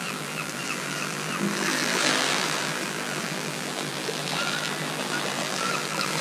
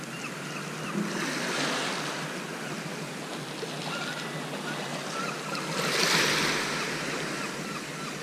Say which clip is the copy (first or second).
first